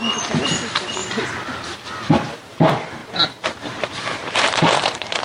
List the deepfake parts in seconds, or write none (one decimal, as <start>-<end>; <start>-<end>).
3.0-5.2